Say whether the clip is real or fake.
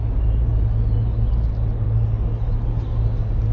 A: real